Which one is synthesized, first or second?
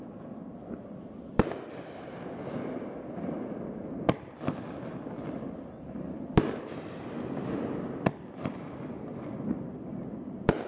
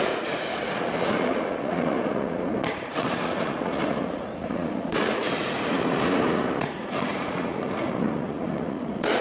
second